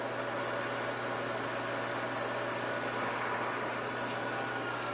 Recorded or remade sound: recorded